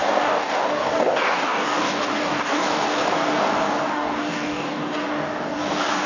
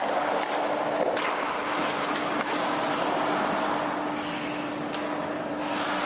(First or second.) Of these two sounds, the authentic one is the second